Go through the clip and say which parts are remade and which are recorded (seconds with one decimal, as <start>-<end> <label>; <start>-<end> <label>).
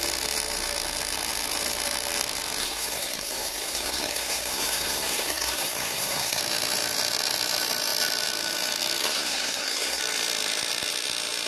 0.0-2.6 recorded; 2.6-6.4 remade; 6.4-9.0 recorded; 9.0-10.0 remade; 10.0-11.5 recorded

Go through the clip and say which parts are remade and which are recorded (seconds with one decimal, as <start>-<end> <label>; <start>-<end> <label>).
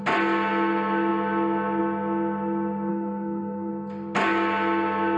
0.0-2.9 recorded; 2.9-3.7 remade; 3.7-5.2 recorded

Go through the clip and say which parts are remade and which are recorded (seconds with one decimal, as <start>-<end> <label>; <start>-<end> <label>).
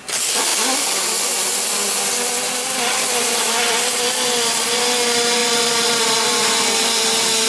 0.0-7.5 recorded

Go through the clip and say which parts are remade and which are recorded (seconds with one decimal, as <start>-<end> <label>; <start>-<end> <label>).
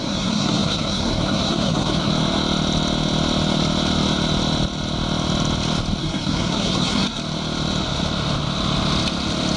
0.0-2.1 remade; 2.1-6.0 recorded; 6.0-7.2 remade; 7.2-9.6 recorded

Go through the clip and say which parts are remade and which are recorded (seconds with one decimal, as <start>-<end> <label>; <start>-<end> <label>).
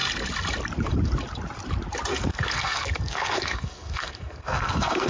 0.0-2.1 recorded; 2.1-5.1 remade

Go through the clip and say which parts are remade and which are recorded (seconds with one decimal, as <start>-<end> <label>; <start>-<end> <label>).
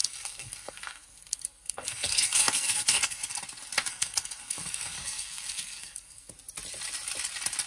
0.0-3.4 remade; 3.4-3.9 recorded; 3.9-6.3 remade; 6.3-7.7 recorded